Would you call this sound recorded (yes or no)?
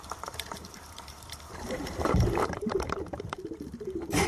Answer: no